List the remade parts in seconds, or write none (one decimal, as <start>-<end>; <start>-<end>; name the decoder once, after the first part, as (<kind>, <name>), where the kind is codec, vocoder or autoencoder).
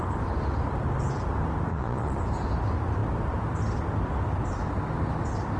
1.7-2.2 (vocoder, Vocos)